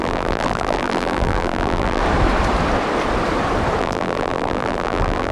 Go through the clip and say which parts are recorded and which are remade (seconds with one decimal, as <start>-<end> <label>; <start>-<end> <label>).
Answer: 0.0-2.0 remade; 2.0-3.8 recorded; 3.8-5.3 remade